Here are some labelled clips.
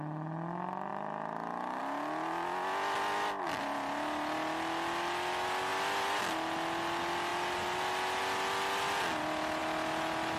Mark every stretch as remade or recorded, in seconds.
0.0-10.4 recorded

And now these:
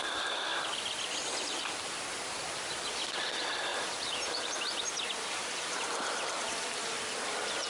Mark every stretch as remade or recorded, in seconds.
0.0-0.5 remade; 0.5-1.4 recorded; 1.4-7.7 remade

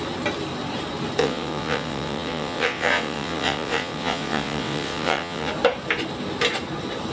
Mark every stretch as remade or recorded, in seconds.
0.0-1.2 recorded; 1.2-5.5 remade; 5.5-7.1 recorded

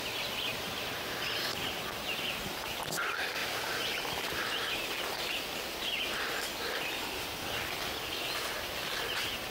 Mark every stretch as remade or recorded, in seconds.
0.0-0.5 recorded; 0.5-2.7 remade; 2.7-3.4 recorded; 3.4-4.0 remade; 4.0-9.5 recorded

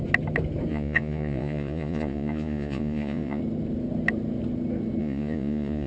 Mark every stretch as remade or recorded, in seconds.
0.0-0.7 recorded; 0.7-3.4 remade; 3.4-5.0 recorded; 5.0-5.9 remade

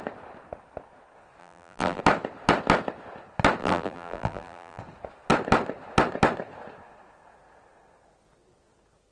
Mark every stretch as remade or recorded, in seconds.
0.0-1.4 recorded; 1.4-2.0 remade; 2.0-3.6 recorded; 3.6-4.8 remade; 4.8-9.1 recorded

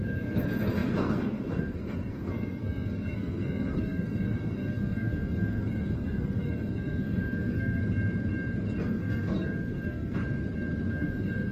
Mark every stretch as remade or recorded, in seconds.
0.0-7.8 remade; 7.8-8.8 recorded; 8.8-10.2 remade; 10.2-10.9 recorded; 10.9-11.5 remade

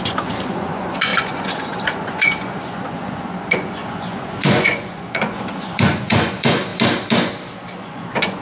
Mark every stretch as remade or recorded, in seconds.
0.0-6.7 remade; 6.7-7.8 recorded; 7.8-8.4 remade